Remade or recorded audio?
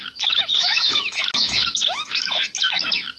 remade